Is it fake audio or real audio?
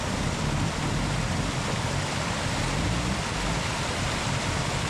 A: real